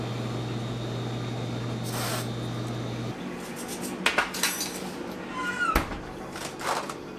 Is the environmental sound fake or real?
real